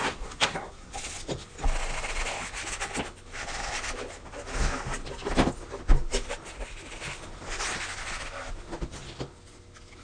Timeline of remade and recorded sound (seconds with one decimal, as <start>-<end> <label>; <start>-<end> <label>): 0.0-0.9 remade; 0.9-10.0 recorded